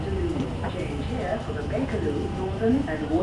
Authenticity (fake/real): real